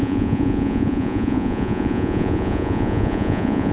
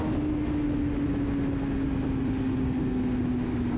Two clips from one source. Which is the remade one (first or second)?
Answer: first